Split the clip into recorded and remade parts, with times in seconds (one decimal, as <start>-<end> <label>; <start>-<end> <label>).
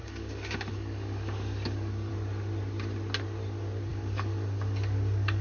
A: 0.0-2.1 remade; 2.1-3.9 recorded; 3.9-5.4 remade